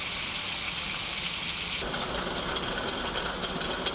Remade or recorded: recorded